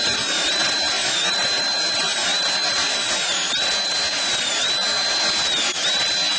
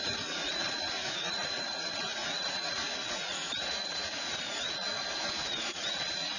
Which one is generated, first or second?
second